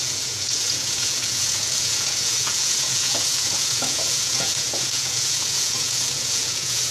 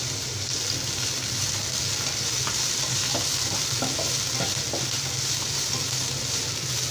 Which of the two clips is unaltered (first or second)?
second